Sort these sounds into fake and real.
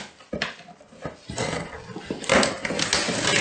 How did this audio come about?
real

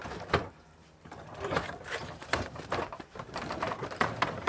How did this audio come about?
fake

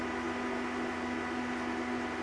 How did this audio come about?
real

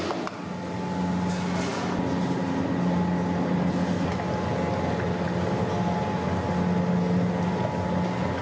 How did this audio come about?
real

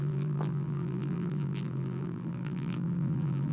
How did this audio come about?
fake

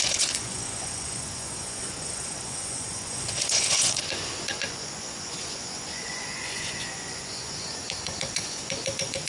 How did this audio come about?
fake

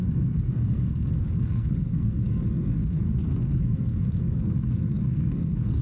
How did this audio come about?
fake